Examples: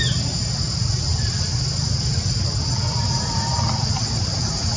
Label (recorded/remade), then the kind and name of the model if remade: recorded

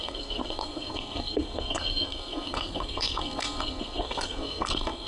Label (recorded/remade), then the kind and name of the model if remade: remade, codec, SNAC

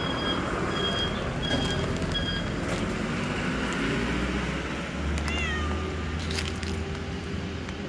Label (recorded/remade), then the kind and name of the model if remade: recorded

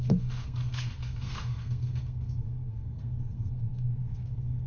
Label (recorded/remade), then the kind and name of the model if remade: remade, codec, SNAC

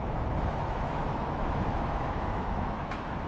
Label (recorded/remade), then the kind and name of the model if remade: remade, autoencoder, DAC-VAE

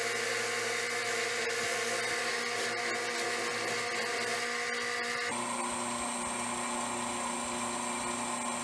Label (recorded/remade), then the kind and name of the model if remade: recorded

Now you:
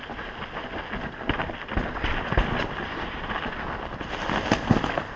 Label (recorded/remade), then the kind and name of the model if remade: recorded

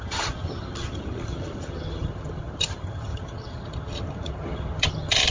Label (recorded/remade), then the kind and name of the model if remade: remade, vocoder, HiFi-GAN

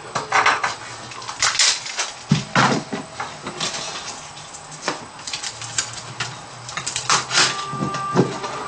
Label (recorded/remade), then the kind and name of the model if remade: recorded